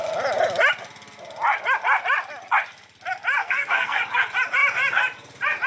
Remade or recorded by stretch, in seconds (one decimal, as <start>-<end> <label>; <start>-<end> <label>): 0.0-3.4 recorded; 3.4-4.0 remade; 4.0-5.7 recorded